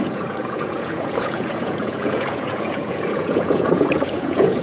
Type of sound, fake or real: fake